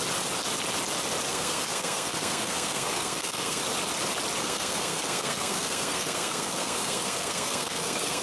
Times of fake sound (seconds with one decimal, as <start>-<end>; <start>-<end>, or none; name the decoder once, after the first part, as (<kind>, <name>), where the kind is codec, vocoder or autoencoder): 1.3-3.6 (codec, SNAC); 4.4-8.2